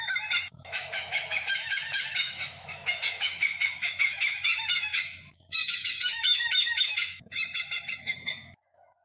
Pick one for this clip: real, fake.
fake